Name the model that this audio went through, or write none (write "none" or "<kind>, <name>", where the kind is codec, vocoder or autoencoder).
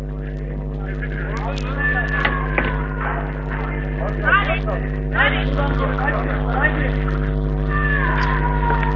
none